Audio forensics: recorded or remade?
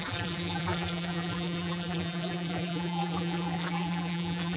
remade